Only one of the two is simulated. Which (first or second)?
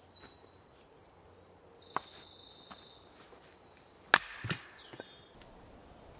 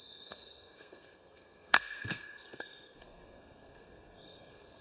second